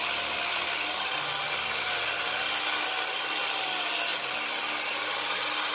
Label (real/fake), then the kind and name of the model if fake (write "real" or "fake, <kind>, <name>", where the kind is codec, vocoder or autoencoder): real